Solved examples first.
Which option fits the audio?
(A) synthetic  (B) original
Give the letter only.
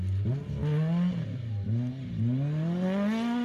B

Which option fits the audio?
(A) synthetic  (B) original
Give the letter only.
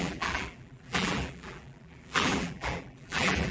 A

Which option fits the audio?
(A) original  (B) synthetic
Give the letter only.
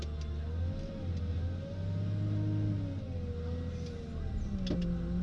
A